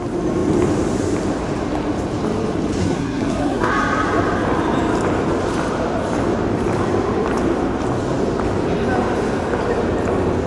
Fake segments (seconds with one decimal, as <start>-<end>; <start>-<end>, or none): 2.8-3.7